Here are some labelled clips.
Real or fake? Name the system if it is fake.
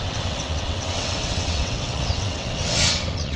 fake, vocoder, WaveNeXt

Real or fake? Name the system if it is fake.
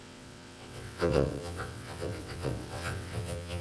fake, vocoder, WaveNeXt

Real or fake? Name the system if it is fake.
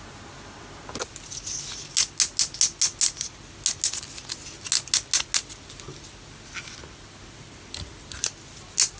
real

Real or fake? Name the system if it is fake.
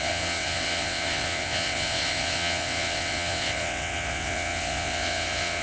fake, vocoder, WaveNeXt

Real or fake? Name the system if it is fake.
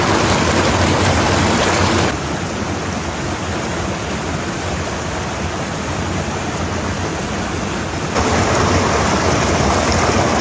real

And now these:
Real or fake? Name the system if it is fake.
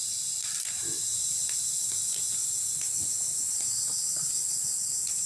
real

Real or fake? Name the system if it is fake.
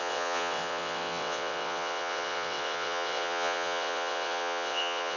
fake, vocoder, WaveNeXt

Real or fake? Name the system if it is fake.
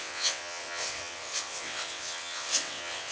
fake, vocoder, WaveNeXt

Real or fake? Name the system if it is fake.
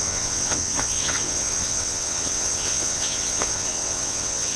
fake, vocoder, WaveNeXt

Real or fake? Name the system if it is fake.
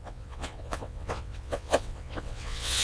fake, vocoder, WaveNeXt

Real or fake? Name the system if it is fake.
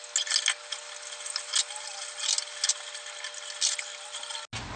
real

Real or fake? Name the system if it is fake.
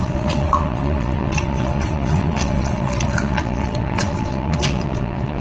fake, vocoder, WaveNeXt